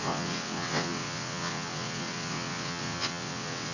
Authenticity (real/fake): fake